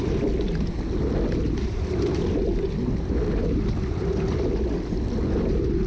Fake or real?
real